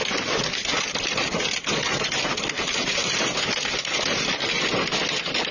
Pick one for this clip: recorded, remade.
recorded